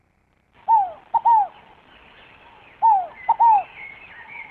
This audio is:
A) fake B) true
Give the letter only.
B